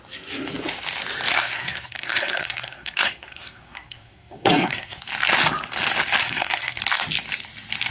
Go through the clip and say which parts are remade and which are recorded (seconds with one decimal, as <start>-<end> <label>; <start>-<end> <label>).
0.0-1.3 recorded; 1.3-5.0 remade; 5.0-6.2 recorded; 6.2-6.8 remade; 6.8-7.9 recorded